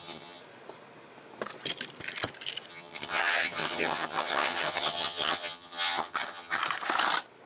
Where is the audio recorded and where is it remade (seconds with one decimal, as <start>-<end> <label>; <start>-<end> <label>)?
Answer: 0.0-0.4 remade; 0.4-2.7 recorded; 2.7-6.6 remade; 6.6-7.5 recorded